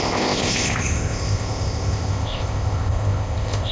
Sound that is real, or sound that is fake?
fake